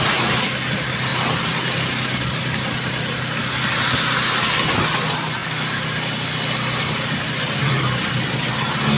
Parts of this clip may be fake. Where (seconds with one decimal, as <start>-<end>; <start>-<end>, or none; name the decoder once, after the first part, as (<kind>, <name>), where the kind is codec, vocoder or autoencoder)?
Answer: none